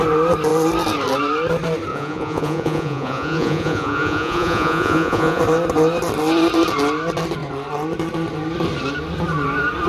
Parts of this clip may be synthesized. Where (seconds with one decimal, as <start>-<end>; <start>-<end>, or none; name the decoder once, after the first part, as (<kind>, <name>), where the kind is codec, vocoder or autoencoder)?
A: 1.9-5.4 (vocoder, Vocos)